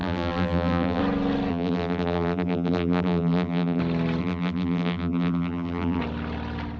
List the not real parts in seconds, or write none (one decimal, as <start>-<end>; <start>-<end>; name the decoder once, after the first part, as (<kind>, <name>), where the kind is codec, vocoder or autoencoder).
0.0-1.0 (vocoder, BigVGAN v2); 1.5-3.8; 4.2-6.0